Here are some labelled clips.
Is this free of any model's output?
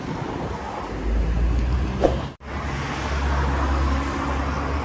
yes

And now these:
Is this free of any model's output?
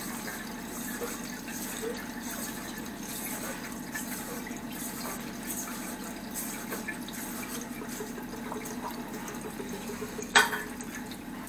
yes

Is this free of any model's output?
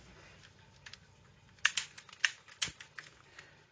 yes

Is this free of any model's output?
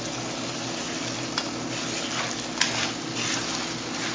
yes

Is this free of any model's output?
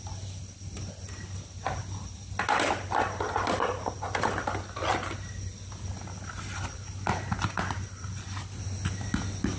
yes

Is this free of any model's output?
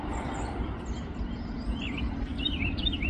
no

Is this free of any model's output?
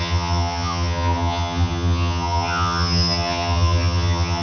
no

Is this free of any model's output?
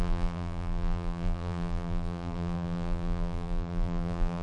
no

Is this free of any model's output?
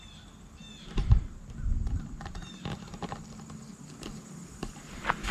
yes